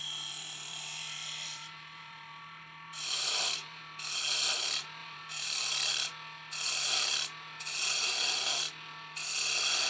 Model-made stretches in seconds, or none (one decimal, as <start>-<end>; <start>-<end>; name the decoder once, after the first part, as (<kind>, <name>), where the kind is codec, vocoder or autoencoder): 0.0-3.8 (vocoder, BigVGAN v2); 5.0-6.1